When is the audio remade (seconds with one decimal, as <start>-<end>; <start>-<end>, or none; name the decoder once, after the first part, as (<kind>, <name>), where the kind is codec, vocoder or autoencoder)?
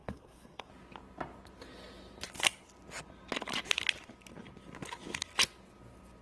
0.0-0.7 (codec, SNAC)